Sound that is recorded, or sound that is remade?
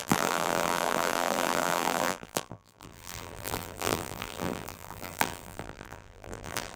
remade